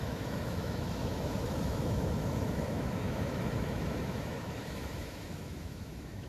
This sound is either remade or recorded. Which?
remade